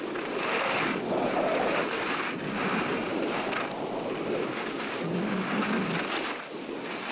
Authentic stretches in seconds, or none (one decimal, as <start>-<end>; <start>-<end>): 0.0-7.1